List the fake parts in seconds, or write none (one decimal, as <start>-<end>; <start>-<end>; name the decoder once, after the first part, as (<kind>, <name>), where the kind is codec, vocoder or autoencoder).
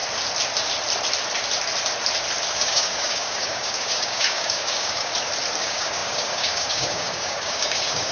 2.5-5.1 (codec, DAC); 5.6-8.1